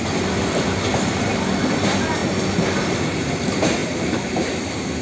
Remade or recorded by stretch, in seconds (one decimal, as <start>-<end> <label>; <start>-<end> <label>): 0.0-0.9 recorded; 0.9-1.5 remade; 1.5-3.8 recorded; 3.8-4.5 remade; 4.5-5.0 recorded